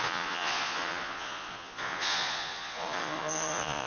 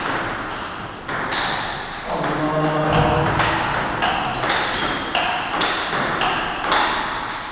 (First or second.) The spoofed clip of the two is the first